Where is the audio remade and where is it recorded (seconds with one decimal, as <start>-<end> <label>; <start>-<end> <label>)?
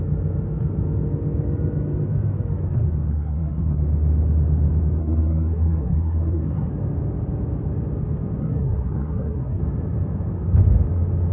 0.0-3.1 recorded; 3.1-3.8 remade; 3.8-5.0 recorded; 5.0-6.7 remade; 6.7-8.4 recorded; 8.4-9.6 remade; 9.6-11.3 recorded